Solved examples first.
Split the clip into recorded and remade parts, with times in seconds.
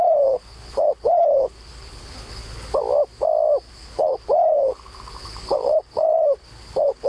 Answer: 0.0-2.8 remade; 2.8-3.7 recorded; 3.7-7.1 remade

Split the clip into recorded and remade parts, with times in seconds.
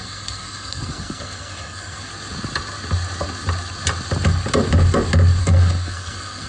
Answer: 0.0-2.1 remade; 2.1-5.4 recorded; 5.4-6.5 remade